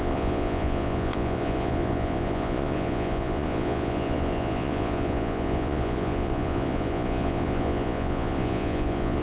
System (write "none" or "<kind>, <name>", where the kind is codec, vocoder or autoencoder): vocoder, Vocos